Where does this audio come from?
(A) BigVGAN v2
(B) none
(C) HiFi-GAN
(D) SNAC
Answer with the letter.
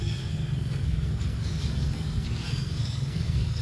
D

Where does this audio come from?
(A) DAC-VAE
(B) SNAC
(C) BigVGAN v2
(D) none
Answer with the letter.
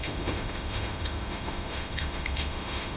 A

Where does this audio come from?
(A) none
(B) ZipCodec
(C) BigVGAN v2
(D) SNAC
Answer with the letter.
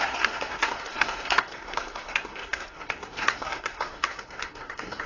D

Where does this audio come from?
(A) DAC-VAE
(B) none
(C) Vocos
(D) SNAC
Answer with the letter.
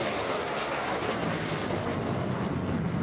B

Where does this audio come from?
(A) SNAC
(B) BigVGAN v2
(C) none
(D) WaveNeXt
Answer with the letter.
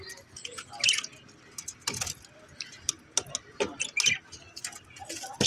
C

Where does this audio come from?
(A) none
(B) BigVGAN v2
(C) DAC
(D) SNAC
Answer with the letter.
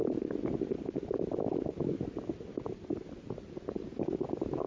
A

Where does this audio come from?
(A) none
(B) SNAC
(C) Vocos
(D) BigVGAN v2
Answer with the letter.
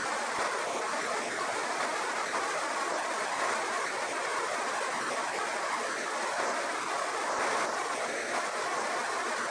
A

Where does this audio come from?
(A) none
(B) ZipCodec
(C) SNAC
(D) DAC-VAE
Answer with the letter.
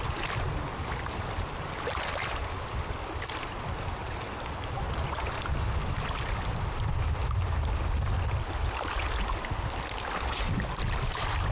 A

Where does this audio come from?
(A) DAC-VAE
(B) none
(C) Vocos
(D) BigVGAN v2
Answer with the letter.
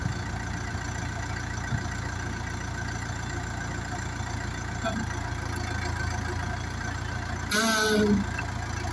B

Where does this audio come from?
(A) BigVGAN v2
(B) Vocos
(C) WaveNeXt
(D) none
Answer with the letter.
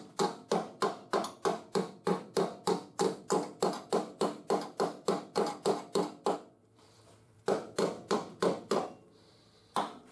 A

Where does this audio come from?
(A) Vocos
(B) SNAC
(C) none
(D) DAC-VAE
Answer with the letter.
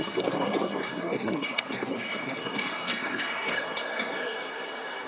B